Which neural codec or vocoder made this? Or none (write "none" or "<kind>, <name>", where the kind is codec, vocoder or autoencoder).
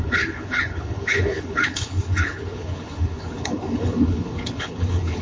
codec, HILCodec